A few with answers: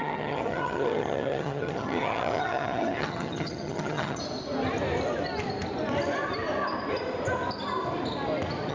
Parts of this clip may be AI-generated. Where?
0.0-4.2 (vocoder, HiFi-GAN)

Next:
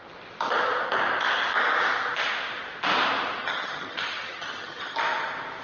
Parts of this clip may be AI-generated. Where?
3.4-5.0 (vocoder, HiFi-GAN)

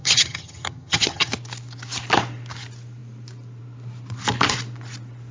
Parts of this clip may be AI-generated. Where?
0.0-1.3 (vocoder, HiFi-GAN)

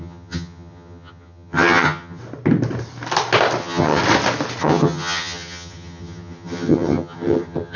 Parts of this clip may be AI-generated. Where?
0.0-2.2 (vocoder, HiFi-GAN); 3.6-4.0; 4.6-7.8

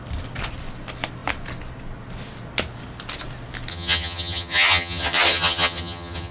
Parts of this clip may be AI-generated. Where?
3.7-6.3 (vocoder, HiFi-GAN)